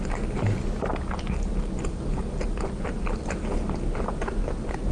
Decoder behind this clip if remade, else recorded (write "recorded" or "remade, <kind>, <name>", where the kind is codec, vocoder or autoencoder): recorded